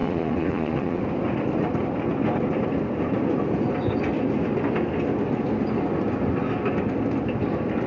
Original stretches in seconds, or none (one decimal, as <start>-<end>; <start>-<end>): 1.0-7.9